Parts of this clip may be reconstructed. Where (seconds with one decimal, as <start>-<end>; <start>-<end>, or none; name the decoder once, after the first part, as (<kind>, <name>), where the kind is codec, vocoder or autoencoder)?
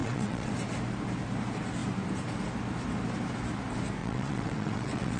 0.0-0.5 (vocoder, WaveNeXt); 4.0-5.2